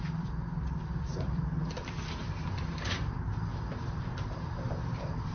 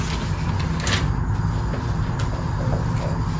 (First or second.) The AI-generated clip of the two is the first